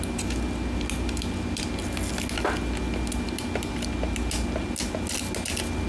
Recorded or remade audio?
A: recorded